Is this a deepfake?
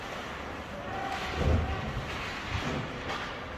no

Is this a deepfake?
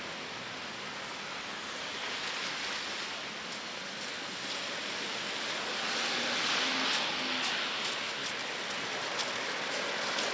no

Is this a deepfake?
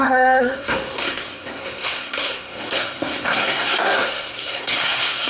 yes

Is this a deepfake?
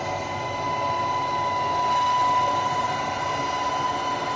no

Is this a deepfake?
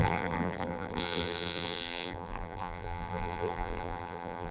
yes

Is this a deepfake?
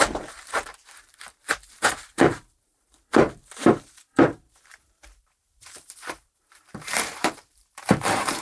yes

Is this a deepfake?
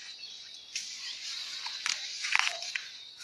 yes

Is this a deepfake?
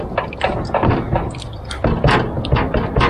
no